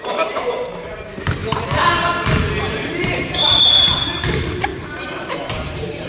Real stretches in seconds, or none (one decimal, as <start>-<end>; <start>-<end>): 1.4-2.6